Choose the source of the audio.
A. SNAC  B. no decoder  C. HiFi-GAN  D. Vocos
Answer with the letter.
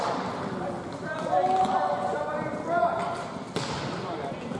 B